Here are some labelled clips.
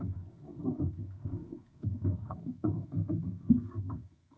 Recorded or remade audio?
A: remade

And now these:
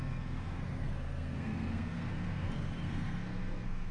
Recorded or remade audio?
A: remade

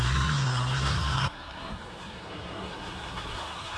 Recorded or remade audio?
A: remade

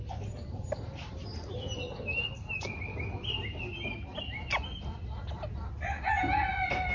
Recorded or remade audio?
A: recorded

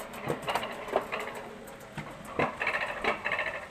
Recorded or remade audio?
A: recorded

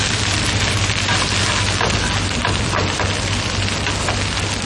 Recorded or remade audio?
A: recorded